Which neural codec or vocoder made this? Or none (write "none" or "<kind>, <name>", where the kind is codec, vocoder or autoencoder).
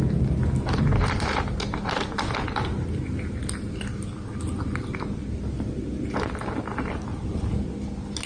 none